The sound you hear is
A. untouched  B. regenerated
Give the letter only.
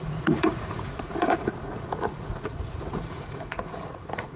B